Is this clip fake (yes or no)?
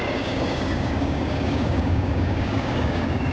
yes